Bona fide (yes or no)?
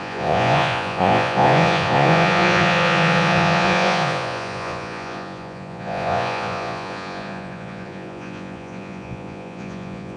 no